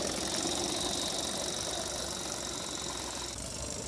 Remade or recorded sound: recorded